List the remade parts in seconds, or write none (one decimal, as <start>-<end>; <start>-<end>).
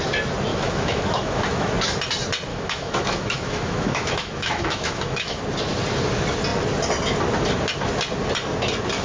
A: 0.5-1.7; 2.5-5.4